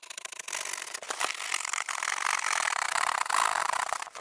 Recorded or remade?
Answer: recorded